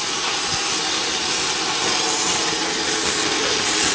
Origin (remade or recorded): recorded